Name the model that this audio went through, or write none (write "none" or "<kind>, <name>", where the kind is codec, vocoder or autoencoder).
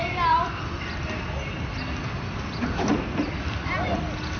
none